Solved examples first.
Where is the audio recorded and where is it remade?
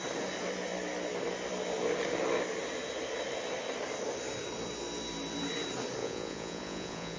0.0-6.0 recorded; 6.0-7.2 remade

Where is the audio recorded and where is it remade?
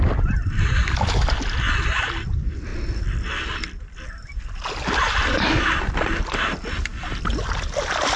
0.0-8.2 recorded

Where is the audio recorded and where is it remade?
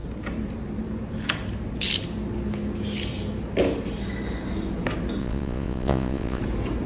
0.0-5.2 recorded; 5.2-6.4 remade; 6.4-6.9 recorded